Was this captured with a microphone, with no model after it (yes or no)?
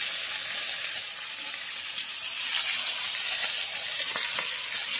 yes